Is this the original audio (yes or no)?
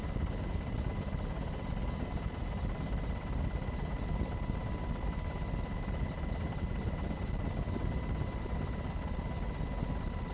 yes